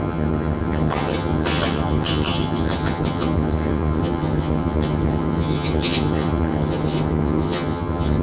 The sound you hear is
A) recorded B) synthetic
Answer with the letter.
B